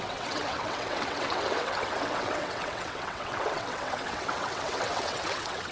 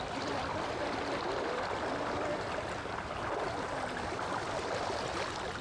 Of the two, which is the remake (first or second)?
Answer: first